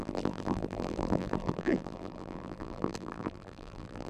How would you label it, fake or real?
fake